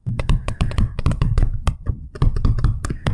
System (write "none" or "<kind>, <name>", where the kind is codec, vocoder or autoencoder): vocoder, WaveNeXt